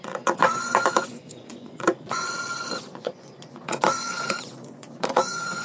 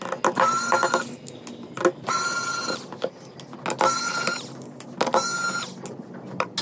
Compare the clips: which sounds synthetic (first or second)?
first